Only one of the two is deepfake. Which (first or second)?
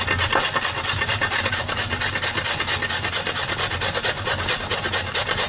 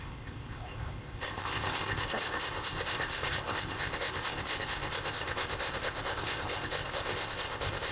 second